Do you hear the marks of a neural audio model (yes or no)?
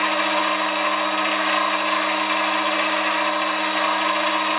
no